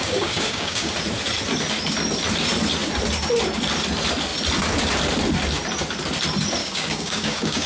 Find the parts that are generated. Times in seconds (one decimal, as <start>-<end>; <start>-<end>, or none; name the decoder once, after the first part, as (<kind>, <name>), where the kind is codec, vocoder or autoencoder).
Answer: 0.0-0.9 (codec, DAC); 6.6-7.7